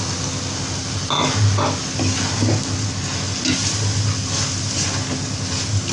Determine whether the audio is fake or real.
real